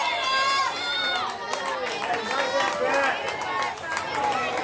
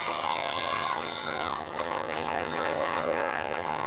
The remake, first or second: second